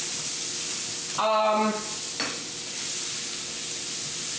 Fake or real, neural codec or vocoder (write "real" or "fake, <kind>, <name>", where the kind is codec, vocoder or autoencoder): real